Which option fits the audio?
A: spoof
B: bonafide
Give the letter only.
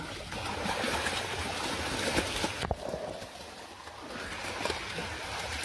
A